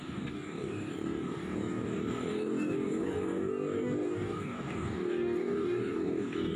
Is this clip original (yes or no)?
no